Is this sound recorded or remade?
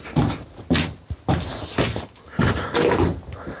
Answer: recorded